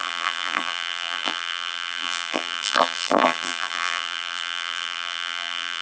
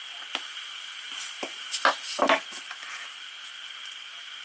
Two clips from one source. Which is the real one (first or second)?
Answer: second